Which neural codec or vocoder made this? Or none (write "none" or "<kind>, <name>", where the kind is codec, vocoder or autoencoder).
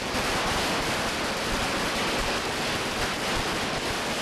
none